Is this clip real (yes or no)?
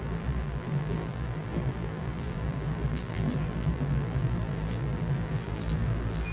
no